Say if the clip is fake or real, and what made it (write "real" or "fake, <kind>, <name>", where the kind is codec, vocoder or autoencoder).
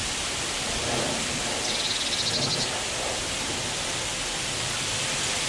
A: real